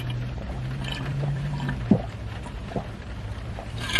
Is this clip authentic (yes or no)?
no